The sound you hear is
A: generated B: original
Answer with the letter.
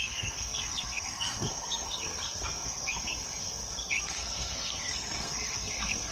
A